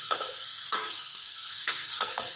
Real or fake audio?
fake